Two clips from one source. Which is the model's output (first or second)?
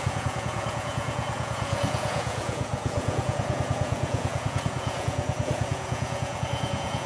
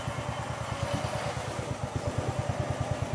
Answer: first